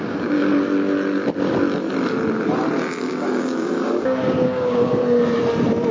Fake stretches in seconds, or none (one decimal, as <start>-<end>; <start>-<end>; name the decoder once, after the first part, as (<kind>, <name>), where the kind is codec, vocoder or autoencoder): 0.0-0.5 (codec, DAC); 3.0-5.0